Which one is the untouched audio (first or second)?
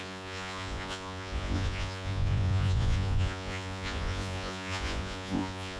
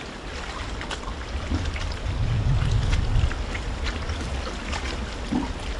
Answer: second